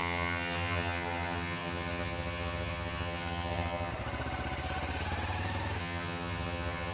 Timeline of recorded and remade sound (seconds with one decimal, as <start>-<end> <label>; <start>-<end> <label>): 0.0-3.9 remade; 3.9-5.8 recorded; 5.8-6.9 remade

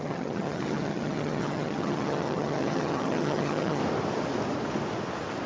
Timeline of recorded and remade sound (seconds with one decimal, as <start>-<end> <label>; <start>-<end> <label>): 0.0-3.8 remade; 3.8-5.5 recorded

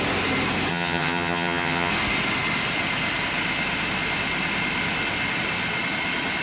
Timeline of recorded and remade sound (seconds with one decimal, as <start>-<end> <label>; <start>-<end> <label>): 0.0-0.7 recorded; 0.7-1.9 remade; 1.9-6.4 recorded

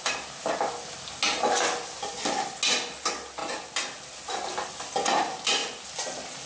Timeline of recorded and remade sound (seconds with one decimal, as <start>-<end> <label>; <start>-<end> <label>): 0.0-6.5 recorded

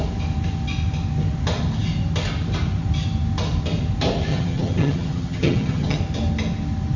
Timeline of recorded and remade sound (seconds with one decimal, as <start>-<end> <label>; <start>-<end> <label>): 0.0-4.3 recorded; 4.3-6.0 remade; 6.0-7.0 recorded

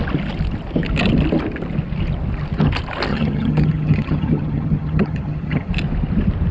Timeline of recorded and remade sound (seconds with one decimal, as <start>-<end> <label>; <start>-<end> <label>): 0.0-3.1 recorded; 3.1-5.7 remade; 5.7-6.5 recorded

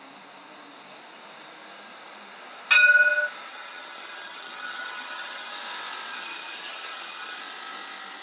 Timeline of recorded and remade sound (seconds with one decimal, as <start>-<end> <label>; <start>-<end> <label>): 0.0-3.5 recorded; 3.5-5.5 remade; 5.5-6.1 recorded; 6.1-7.4 remade; 7.4-8.2 recorded

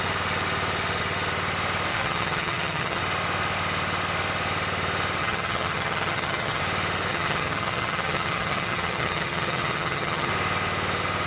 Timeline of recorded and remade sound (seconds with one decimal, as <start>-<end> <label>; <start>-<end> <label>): 0.0-1.9 recorded; 1.9-3.0 remade; 3.0-5.2 recorded; 5.2-6.6 remade; 6.6-7.1 recorded; 7.1-10.3 remade; 10.3-11.3 recorded